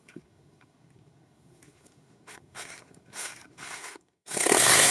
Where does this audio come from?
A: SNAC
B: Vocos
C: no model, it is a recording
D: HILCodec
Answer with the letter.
A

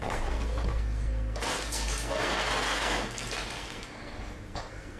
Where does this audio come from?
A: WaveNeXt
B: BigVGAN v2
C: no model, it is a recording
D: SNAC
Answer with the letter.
D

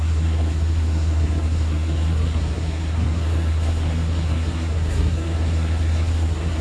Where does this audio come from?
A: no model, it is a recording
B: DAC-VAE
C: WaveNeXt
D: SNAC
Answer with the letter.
D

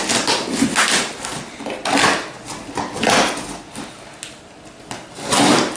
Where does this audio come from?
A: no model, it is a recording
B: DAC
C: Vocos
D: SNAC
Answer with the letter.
A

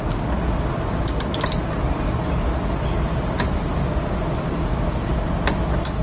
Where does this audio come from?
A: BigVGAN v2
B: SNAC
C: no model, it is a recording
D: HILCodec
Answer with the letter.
C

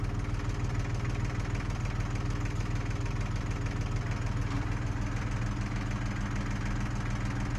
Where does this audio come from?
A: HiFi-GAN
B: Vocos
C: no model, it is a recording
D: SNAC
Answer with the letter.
C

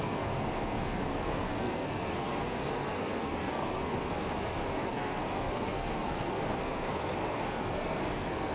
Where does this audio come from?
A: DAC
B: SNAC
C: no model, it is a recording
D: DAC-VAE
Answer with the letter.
B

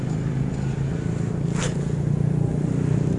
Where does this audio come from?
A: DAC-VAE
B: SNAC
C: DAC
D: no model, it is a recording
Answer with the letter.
D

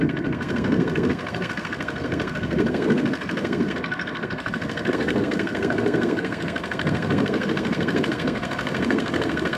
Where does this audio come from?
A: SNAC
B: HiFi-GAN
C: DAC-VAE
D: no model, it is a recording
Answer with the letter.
A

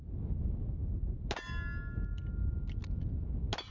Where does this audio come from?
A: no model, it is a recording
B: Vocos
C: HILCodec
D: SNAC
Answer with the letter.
A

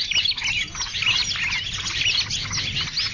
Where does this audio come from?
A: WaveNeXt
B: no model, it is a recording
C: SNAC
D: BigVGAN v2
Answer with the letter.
B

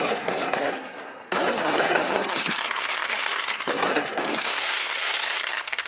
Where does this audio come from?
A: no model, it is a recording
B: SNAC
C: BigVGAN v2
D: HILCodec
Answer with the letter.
B